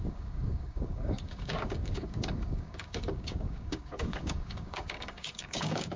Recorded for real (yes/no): no